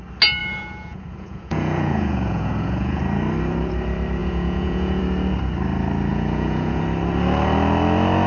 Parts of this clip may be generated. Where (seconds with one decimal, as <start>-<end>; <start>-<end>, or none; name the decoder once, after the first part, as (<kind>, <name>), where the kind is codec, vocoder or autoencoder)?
0.4-3.0 (vocoder, Vocos); 4.2-5.0; 6.1-6.8